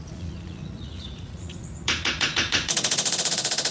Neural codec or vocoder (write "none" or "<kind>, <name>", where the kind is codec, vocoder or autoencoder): vocoder, Vocos